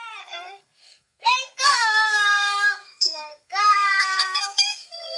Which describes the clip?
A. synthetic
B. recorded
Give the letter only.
A